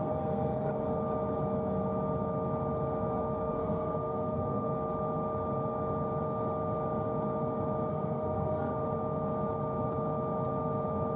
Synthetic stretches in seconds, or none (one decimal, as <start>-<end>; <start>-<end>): 0.0-0.7; 3.5-4.7; 7.9-8.7